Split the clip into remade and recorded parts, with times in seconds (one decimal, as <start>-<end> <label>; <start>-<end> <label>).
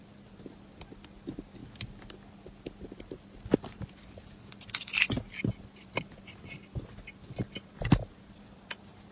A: 0.0-9.1 recorded